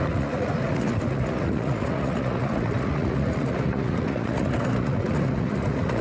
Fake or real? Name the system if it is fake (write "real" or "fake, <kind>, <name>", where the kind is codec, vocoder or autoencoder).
fake, vocoder, Vocos